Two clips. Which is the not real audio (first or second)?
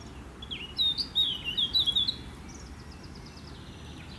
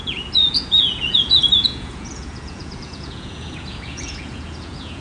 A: second